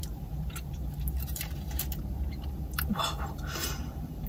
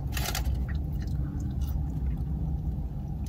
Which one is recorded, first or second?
second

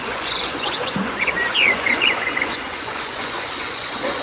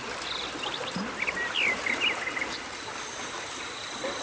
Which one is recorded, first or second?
second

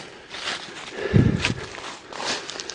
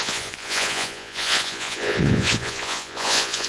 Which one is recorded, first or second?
first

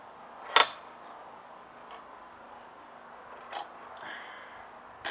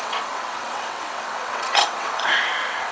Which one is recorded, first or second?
first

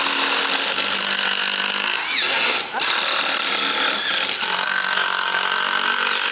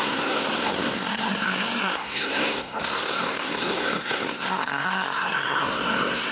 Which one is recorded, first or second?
first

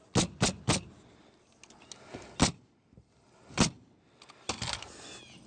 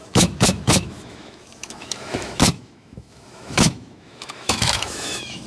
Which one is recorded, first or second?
first